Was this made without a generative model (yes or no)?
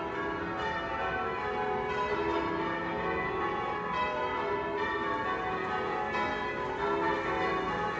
yes